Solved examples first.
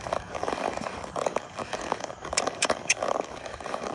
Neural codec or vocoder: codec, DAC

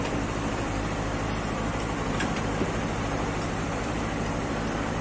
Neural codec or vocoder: vocoder, BigVGAN v2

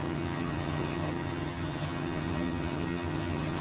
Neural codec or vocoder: vocoder, HiFi-GAN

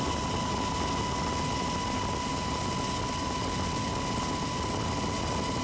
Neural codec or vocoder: none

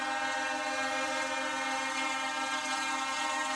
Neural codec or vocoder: none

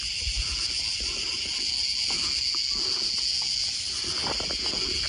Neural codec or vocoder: none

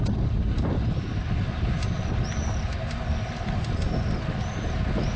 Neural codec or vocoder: none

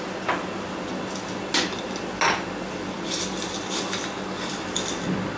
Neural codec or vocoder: none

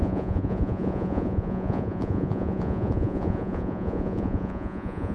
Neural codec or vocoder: vocoder, Vocos